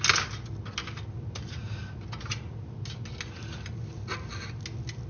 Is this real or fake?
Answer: real